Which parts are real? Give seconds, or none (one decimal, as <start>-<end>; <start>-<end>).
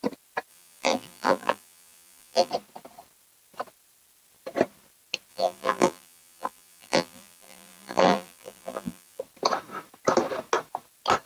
0.0-0.5; 2.5-5.3; 9.2-11.3